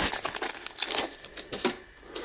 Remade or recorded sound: recorded